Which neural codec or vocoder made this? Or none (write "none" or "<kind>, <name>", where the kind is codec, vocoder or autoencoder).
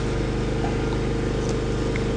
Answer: none